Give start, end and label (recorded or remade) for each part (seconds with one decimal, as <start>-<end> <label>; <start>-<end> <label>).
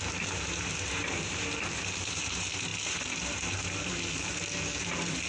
0.0-5.3 recorded